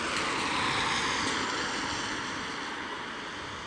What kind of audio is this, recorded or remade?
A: recorded